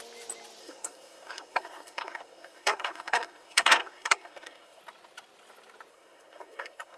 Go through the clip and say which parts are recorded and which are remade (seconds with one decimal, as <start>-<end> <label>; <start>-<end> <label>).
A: 0.0-0.6 recorded; 0.6-4.8 remade; 4.8-5.9 recorded; 5.9-7.0 remade